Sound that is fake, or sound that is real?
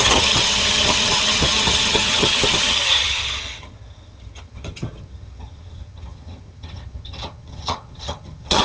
fake